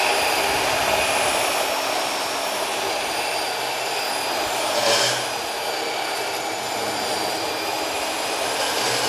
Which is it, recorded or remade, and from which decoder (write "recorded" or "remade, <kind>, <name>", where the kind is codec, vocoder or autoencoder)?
recorded